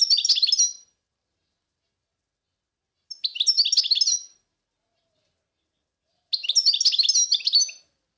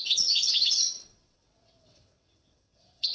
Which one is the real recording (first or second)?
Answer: first